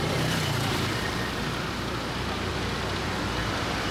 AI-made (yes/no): yes